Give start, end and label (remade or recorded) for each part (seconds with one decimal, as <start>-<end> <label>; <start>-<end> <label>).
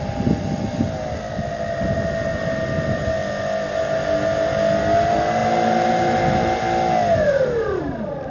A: 0.0-8.3 recorded